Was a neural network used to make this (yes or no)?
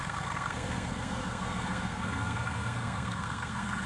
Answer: yes